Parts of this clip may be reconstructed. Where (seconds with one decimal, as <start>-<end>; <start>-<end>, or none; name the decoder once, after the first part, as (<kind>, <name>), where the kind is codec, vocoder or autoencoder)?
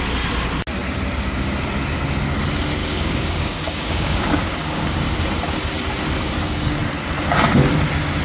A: 2.8-5.0 (codec, DAC)